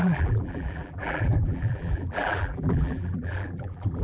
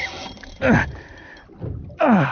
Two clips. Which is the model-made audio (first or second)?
first